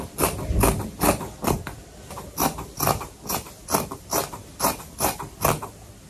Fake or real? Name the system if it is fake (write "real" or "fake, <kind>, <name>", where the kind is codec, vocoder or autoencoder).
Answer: real